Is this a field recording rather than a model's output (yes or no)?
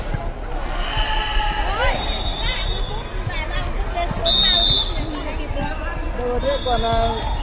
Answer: yes